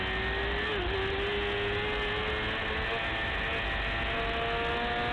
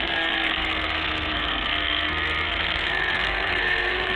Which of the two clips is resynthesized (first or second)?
second